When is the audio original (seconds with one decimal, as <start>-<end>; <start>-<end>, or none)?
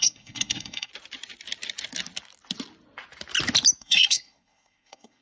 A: 0.9-3.8